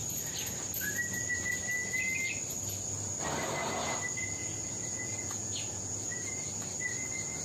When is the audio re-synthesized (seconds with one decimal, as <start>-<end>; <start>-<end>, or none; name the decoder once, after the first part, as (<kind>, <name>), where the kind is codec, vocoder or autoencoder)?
4.4-6.5 (vocoder, Vocos)